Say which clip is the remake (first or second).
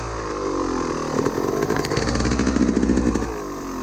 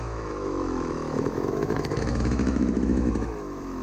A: second